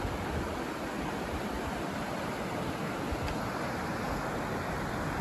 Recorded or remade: recorded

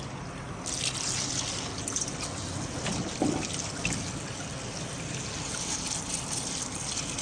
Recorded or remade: recorded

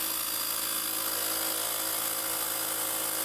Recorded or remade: recorded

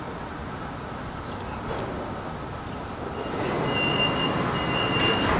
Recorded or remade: recorded